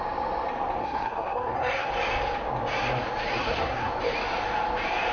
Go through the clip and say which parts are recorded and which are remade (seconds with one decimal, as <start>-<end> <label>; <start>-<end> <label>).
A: 0.0-0.8 recorded; 0.8-1.9 remade; 1.9-3.4 recorded; 3.4-3.9 remade; 3.9-5.1 recorded